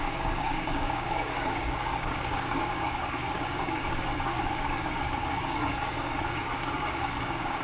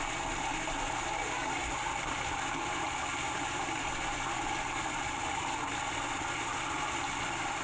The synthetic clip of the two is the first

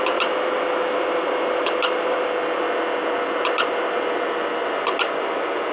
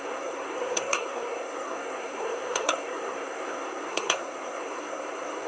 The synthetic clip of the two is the second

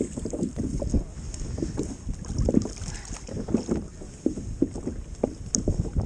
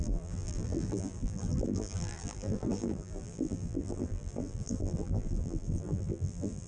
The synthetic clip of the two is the second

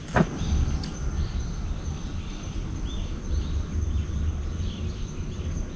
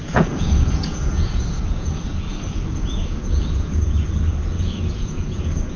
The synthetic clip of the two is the second